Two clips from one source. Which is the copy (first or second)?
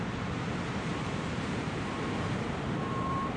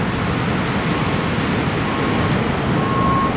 first